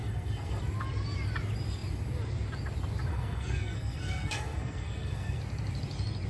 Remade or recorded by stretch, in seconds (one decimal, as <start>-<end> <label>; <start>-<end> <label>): 0.0-0.6 remade; 0.6-3.1 recorded; 3.1-5.4 remade; 5.4-6.3 recorded